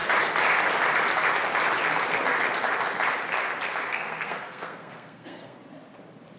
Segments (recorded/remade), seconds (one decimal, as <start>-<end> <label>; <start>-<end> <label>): 0.0-3.9 recorded; 3.9-5.6 remade; 5.6-6.4 recorded